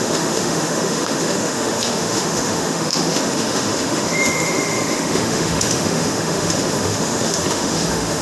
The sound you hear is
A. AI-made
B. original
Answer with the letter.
A